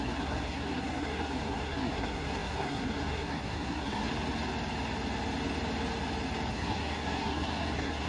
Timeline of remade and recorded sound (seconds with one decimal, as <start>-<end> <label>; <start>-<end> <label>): 0.0-4.1 remade; 4.1-6.5 recorded; 6.5-8.1 remade

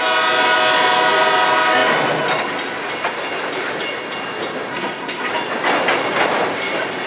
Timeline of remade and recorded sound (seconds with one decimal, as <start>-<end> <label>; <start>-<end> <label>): 0.0-4.7 recorded; 4.7-5.3 remade; 5.3-7.1 recorded

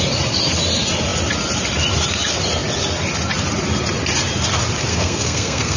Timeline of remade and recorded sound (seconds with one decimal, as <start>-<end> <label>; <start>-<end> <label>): 0.0-4.9 recorded; 4.9-5.8 remade

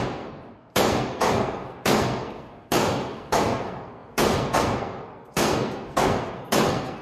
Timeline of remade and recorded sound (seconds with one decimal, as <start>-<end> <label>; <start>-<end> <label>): 0.0-7.0 remade

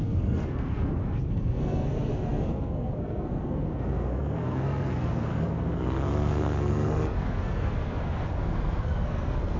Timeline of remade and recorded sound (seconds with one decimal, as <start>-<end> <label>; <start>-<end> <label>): 0.0-9.6 remade

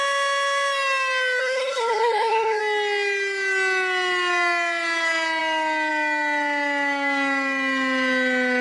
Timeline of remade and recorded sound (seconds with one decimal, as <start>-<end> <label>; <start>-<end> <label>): 0.0-1.4 recorded; 1.4-2.6 remade; 2.6-8.6 recorded